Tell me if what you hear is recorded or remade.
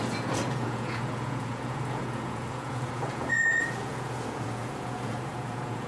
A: remade